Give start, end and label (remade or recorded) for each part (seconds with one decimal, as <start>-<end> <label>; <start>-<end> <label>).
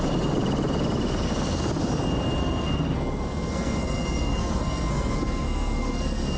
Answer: 0.0-2.4 recorded; 2.4-6.4 remade